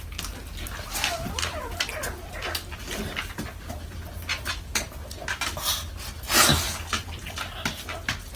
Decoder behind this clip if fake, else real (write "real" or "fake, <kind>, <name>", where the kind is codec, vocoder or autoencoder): real